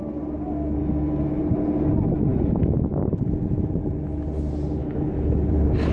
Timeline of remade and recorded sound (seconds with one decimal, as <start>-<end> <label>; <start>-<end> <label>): 0.0-0.8 recorded; 0.8-1.4 remade; 1.4-2.3 recorded; 2.3-3.7 remade; 3.7-4.8 recorded; 4.8-5.5 remade; 5.5-5.9 recorded

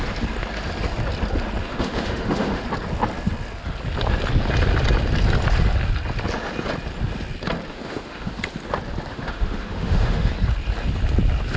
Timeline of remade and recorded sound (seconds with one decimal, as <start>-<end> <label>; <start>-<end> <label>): 0.0-1.6 recorded; 1.6-2.6 remade; 2.6-7.7 recorded; 7.7-8.3 remade; 8.3-9.1 recorded; 9.1-10.3 remade; 10.3-11.6 recorded